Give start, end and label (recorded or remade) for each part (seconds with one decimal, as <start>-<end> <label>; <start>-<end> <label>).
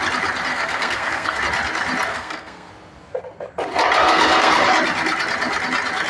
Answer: 0.0-0.5 recorded; 0.5-1.4 remade; 1.4-2.1 recorded; 2.1-2.7 remade; 2.7-4.0 recorded; 4.0-4.6 remade; 4.6-6.1 recorded